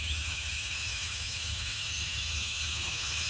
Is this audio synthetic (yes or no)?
yes